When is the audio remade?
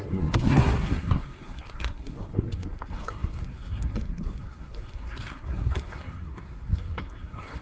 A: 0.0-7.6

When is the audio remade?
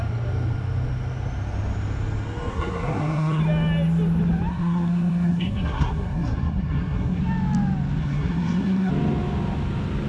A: 2.5-3.4; 4.5-7.2; 8.0-8.9